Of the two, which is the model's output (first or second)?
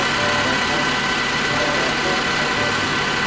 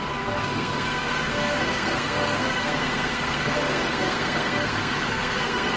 second